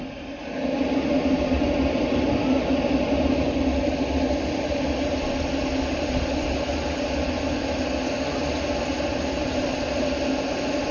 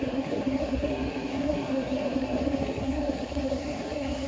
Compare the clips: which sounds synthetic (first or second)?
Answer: second